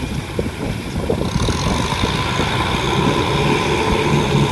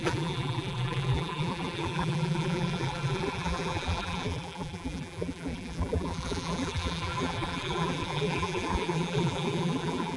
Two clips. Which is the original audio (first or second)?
first